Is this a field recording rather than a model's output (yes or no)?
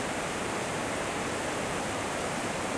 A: no